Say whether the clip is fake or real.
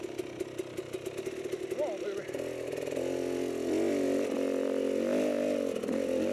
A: real